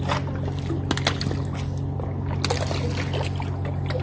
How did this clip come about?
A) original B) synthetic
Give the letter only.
A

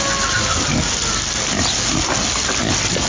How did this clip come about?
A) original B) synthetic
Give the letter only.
A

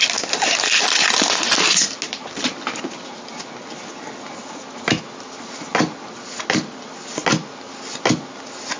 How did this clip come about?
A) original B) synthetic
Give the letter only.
A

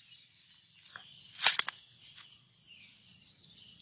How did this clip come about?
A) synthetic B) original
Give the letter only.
B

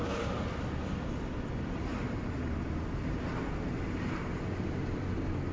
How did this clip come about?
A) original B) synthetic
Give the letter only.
A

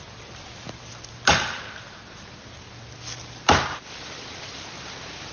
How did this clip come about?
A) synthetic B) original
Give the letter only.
B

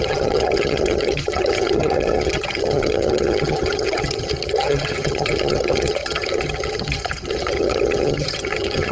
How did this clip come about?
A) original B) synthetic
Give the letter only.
B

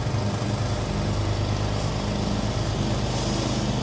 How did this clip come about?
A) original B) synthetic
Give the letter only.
A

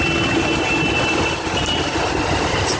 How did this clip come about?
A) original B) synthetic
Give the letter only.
A